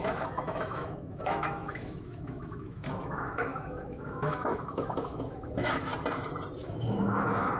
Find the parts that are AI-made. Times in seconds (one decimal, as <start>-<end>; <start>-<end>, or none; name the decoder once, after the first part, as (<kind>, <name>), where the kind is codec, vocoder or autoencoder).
0.0-5.9 (autoencoder, DAC-VAE); 6.6-7.6